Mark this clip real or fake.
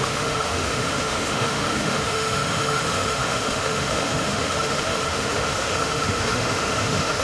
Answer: fake